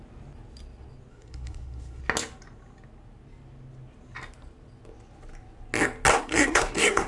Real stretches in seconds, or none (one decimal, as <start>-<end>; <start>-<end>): 0.0-1.1; 2.0-6.1

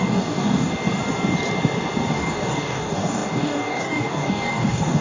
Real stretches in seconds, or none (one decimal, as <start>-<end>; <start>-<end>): 0.7-2.1